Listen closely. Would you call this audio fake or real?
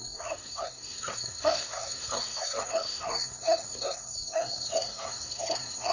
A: fake